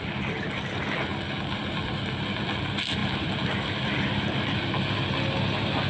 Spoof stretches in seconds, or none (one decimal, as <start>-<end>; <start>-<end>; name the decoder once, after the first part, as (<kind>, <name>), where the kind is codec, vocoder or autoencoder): none